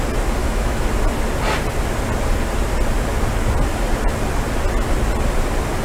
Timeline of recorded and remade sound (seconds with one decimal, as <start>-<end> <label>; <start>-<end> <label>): 0.0-0.4 recorded; 0.4-0.9 remade; 0.9-5.8 recorded

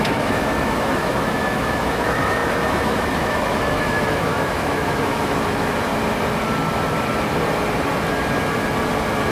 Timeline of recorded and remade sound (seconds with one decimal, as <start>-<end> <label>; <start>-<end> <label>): 0.0-5.9 remade; 5.9-9.3 recorded

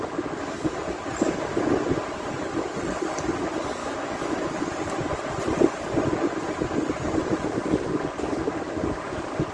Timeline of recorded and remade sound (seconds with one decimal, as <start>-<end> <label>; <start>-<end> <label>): 0.0-3.8 recorded; 3.8-4.5 remade; 4.5-9.5 recorded

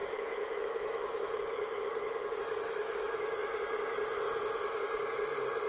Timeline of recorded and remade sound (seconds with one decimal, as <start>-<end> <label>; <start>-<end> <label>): 0.0-3.4 remade; 3.4-5.7 recorded

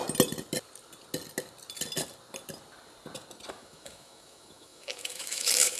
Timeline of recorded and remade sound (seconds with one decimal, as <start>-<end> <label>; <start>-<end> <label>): 0.0-3.5 recorded; 3.5-5.8 remade

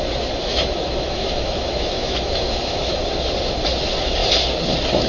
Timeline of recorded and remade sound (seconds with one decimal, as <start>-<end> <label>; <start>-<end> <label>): 0.0-0.4 recorded; 0.4-3.0 remade; 3.0-5.1 recorded

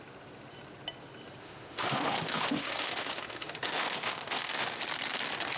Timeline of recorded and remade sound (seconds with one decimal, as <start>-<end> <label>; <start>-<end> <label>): 0.0-1.4 recorded; 1.4-4.8 remade; 4.8-5.6 recorded

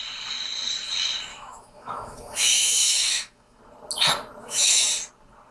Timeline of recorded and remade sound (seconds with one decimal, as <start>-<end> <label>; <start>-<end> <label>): 0.0-1.3 recorded; 1.3-3.6 remade; 3.6-4.4 recorded; 4.4-4.9 remade; 4.9-5.5 recorded